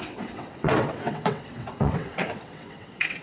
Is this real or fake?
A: fake